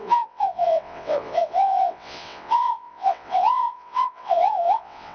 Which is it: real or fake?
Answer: fake